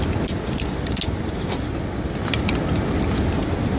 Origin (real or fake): real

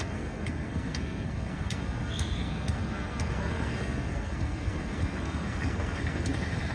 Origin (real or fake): fake